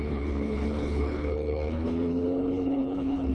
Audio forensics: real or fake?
fake